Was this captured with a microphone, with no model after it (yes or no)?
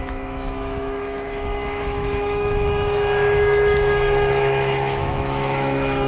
no